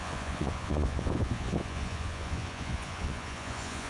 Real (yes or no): no